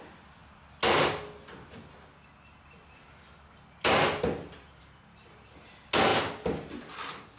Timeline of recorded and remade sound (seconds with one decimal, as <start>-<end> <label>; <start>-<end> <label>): 0.0-7.4 recorded